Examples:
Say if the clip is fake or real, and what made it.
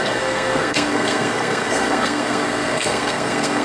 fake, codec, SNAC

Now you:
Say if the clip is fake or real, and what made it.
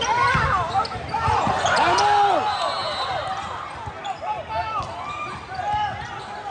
real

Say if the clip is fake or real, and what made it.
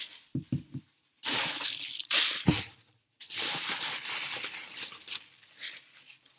real